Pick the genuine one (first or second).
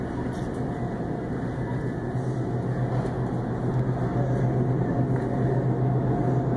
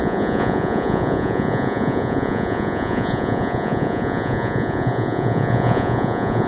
first